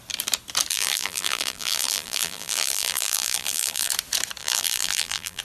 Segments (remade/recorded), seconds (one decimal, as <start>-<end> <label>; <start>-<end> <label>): 0.0-0.7 recorded; 0.7-3.9 remade; 3.9-4.4 recorded; 4.4-5.4 remade